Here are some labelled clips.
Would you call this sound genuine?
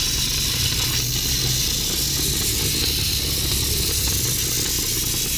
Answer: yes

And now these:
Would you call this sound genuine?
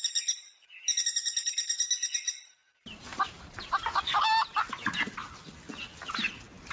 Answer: yes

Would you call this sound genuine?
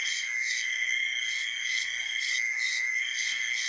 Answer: no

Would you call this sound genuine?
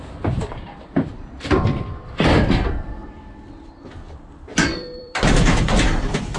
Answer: no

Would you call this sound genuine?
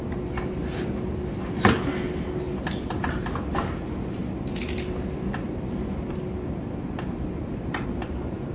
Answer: yes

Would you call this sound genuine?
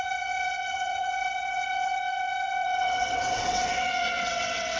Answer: no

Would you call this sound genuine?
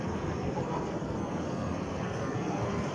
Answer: no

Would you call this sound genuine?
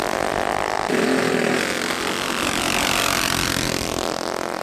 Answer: yes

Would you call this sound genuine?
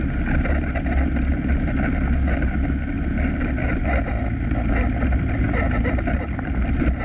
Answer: yes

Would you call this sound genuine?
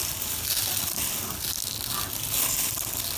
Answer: yes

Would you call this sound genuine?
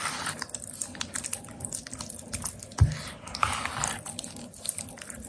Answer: yes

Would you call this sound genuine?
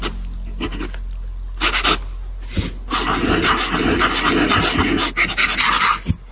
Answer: yes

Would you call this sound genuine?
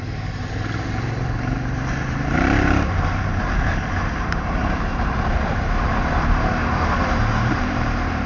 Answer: no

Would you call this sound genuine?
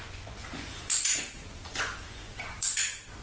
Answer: no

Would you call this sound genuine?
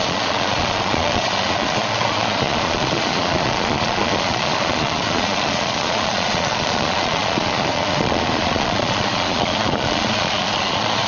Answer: no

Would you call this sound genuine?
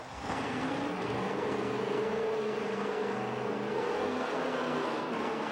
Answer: no